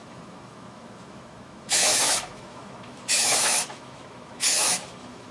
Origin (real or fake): fake